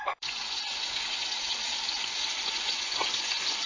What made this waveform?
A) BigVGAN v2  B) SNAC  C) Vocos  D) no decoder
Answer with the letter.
C